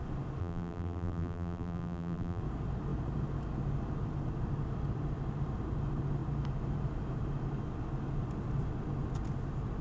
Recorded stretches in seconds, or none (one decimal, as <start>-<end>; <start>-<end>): 0.0-0.4; 2.4-9.8